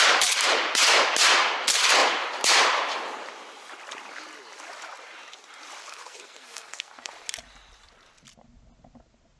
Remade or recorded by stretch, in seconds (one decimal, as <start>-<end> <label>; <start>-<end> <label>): 0.0-5.8 recorded; 5.8-7.1 remade; 7.1-9.4 recorded